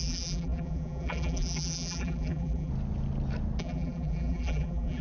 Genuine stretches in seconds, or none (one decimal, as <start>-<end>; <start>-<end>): 2.7-3.6